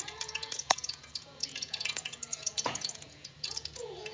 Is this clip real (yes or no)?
no